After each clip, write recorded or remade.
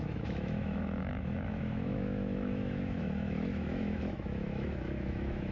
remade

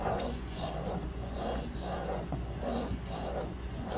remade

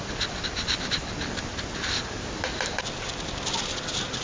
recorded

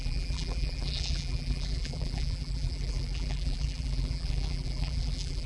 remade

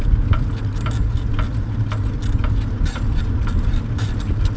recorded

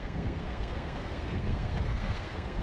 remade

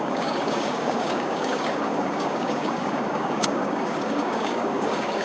remade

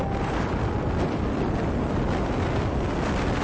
recorded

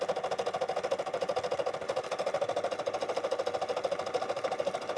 recorded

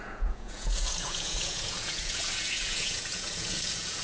remade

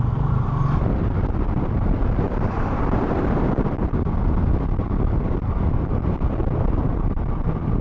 remade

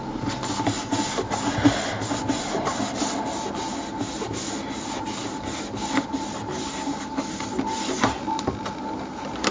recorded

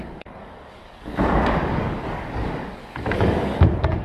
remade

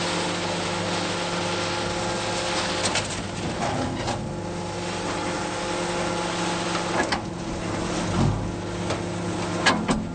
recorded